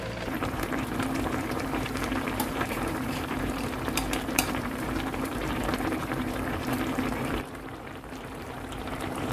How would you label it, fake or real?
fake